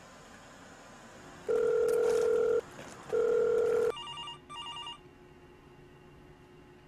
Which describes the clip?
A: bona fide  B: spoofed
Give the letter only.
A